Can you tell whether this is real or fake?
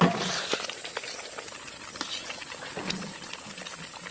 real